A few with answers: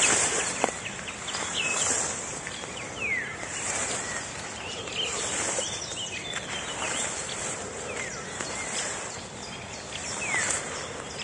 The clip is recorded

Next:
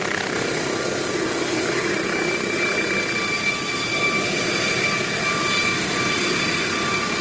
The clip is recorded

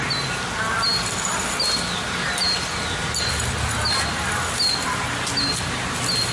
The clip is recorded